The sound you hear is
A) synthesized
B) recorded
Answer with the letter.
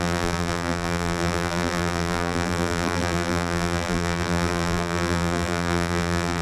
A